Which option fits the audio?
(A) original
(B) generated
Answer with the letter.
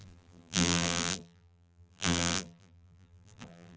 B